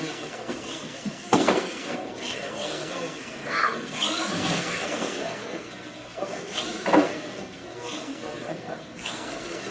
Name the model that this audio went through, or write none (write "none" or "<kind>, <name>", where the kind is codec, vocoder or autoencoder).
codec, SNAC